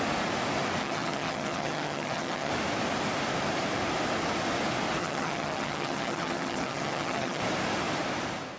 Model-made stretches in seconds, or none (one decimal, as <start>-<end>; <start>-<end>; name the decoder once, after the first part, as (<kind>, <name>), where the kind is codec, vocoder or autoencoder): 0.8-2.5 (vocoder, HiFi-GAN); 5.0-7.4

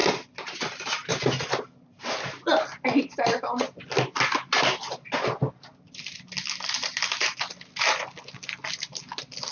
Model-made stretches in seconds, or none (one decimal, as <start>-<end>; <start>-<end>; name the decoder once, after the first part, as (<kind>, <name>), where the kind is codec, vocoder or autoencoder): none

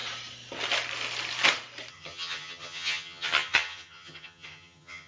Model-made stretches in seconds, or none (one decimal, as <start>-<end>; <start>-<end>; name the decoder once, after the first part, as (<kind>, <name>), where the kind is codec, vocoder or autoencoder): 1.9-5.1 (vocoder, HiFi-GAN)